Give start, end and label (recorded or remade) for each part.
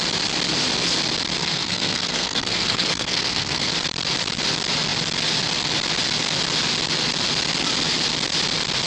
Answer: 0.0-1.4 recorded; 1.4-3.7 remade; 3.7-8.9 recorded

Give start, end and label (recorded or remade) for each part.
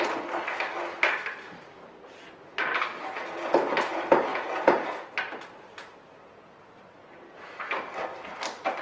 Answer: 0.0-4.3 recorded; 4.3-5.1 remade; 5.1-8.8 recorded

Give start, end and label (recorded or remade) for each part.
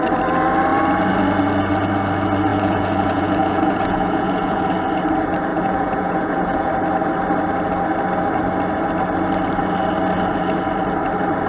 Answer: 0.0-2.5 recorded; 2.5-4.7 remade; 4.7-5.5 recorded; 5.5-6.7 remade; 6.7-11.5 recorded